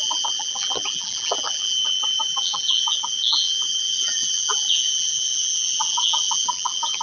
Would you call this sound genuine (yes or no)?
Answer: no